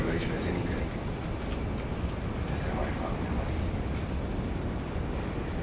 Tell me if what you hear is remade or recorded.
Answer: recorded